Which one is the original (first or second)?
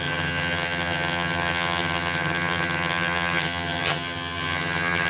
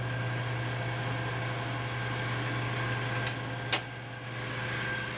second